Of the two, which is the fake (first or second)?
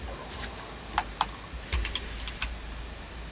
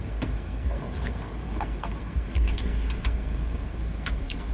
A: second